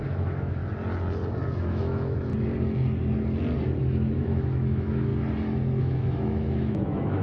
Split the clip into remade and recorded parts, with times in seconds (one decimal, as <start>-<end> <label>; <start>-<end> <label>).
0.0-0.6 remade; 0.6-1.6 recorded; 1.6-2.3 remade; 2.3-3.8 recorded; 3.8-5.1 remade; 5.1-5.8 recorded; 5.8-7.2 remade